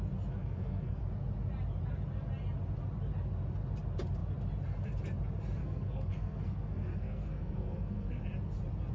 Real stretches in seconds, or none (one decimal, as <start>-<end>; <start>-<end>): 0.0-0.4; 1.0-5.6; 8.2-8.9

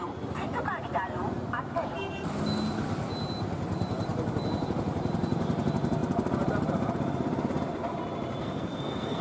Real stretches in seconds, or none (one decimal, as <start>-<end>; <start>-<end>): 0.0-8.4

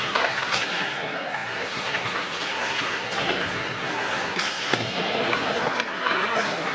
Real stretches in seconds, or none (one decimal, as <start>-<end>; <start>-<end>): none